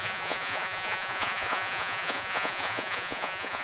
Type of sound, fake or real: fake